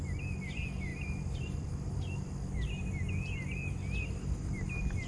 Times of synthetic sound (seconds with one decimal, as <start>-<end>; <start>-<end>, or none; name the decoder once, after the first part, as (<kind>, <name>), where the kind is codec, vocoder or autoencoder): none